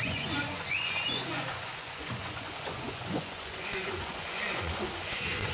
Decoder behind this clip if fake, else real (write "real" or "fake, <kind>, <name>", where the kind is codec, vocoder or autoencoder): fake, vocoder, Vocos